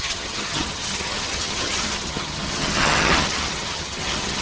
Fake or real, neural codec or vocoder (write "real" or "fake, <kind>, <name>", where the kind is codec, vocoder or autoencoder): fake, vocoder, HiFi-GAN